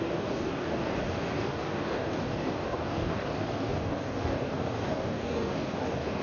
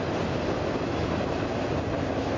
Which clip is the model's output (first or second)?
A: first